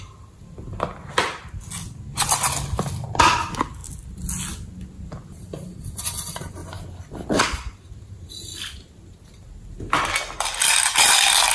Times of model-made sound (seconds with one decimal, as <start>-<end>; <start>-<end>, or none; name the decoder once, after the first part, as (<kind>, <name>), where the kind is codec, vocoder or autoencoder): none